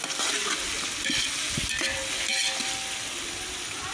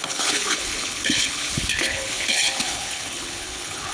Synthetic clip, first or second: second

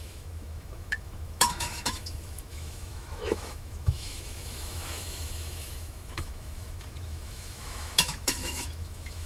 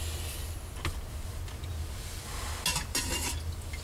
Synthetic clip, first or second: first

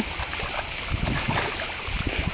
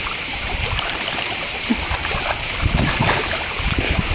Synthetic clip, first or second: second